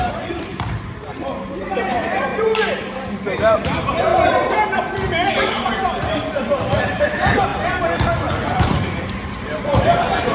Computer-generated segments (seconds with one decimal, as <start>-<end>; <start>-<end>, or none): 0.0-4.1; 5.3-7.5; 8.6-10.3